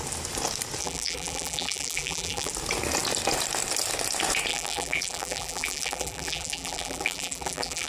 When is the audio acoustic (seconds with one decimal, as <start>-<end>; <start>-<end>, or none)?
0.0-0.8; 2.5-4.5